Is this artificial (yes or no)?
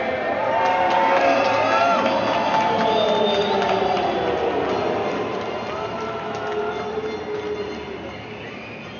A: no